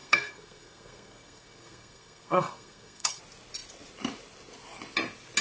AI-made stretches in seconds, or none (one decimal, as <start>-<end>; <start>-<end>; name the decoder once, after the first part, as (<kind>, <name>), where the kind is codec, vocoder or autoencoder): 0.0-3.2 (codec, SNAC)